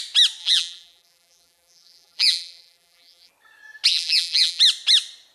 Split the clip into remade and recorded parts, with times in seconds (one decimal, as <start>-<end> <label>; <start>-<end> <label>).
0.0-0.4 recorded; 0.4-3.3 remade; 3.3-3.9 recorded; 3.9-4.6 remade; 4.6-5.3 recorded